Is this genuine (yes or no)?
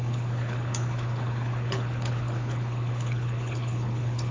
no